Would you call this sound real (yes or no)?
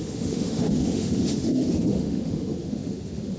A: no